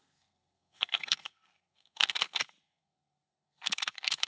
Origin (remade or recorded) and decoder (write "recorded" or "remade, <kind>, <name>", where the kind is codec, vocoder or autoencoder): remade, codec, SNAC